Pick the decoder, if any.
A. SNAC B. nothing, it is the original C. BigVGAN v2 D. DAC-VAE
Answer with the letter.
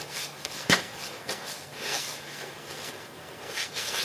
A